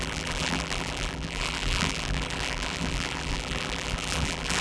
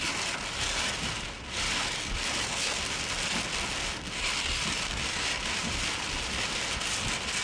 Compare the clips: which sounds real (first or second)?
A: second